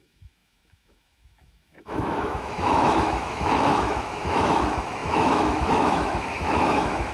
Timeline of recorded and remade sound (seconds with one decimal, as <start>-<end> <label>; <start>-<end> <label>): 0.0-7.1 remade